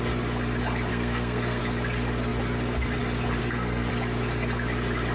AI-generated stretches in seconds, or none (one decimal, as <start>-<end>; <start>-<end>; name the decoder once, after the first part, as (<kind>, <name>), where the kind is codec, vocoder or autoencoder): 0.9-1.6 (codec, SNAC); 3.4-3.9